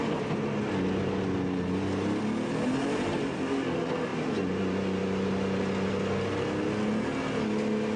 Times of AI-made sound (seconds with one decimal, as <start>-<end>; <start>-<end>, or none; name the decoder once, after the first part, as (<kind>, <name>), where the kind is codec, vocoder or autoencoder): none